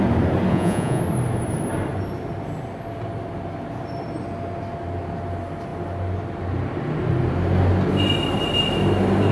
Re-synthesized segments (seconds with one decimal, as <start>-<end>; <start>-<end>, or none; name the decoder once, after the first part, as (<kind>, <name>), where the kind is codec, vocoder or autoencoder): 0.5-1.0 (vocoder, Vocos)